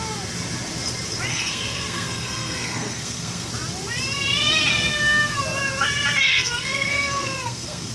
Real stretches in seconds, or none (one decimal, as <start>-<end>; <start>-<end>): 0.0-1.3; 3.5-4.7; 5.4-6.3